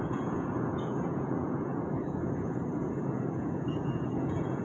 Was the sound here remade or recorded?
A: remade